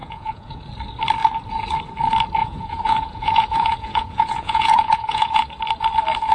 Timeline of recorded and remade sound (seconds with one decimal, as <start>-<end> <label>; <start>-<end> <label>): 0.0-0.6 remade; 0.6-2.4 recorded; 2.4-5.5 remade; 5.5-6.3 recorded